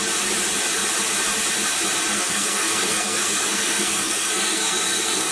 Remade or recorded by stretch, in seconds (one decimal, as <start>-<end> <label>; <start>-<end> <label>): 0.0-2.1 recorded; 2.1-5.3 remade